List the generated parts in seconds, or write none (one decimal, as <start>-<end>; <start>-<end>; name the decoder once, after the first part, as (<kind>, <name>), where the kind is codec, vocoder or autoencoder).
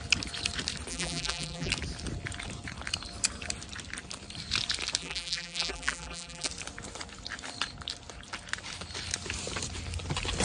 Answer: 0.9-1.7 (vocoder, BigVGAN v2); 5.0-6.5